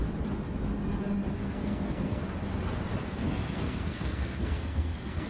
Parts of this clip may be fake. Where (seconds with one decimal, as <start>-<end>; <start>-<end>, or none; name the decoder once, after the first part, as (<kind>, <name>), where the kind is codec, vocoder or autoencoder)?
1.3-2.2 (codec, SNAC); 3.1-5.3